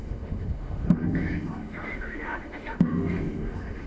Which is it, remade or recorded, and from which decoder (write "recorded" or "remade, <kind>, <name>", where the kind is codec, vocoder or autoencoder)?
remade, autoencoder, DAC-VAE